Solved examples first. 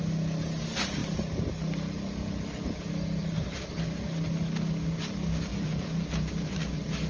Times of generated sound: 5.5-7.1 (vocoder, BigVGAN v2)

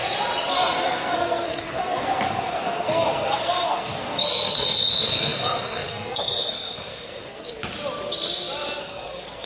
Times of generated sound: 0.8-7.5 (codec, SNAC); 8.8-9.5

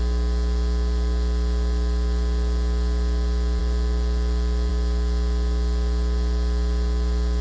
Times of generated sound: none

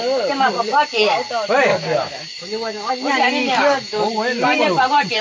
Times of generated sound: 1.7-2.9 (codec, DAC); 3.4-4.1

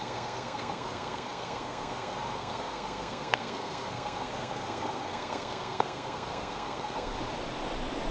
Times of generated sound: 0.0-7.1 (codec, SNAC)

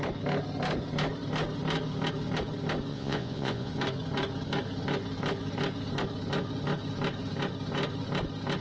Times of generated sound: 2.9-3.7 (vocoder, Vocos)

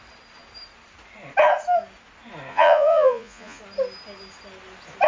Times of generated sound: 2.5-3.6 (vocoder, Vocos)

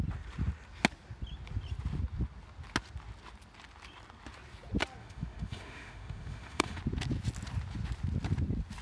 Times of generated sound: 5.0-6.8 (autoencoder, DAC-VAE)